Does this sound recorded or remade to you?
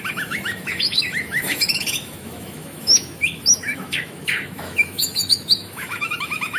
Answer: remade